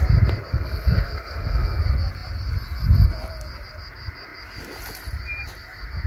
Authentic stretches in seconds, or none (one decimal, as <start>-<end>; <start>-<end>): 0.0-0.5; 1.8-6.1